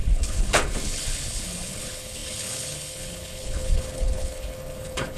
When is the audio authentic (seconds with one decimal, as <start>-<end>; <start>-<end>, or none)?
none